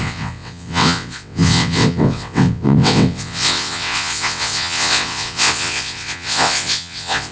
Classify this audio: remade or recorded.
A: remade